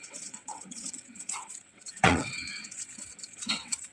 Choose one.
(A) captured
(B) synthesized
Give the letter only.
B